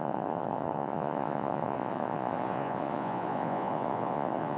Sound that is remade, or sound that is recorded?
remade